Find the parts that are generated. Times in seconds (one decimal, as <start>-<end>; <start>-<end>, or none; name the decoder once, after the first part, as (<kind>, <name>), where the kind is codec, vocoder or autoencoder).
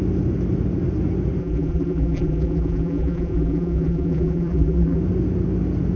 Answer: 1.4-5.0 (vocoder, BigVGAN v2)